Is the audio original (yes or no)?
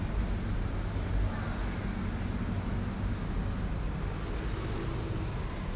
yes